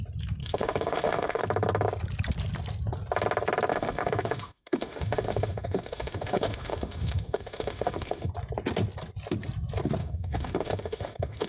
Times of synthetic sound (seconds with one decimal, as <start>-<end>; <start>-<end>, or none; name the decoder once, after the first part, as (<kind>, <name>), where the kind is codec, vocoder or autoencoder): 0.4-1.4 (autoencoder, DAC-VAE); 3.7-8.3; 10.0-11.5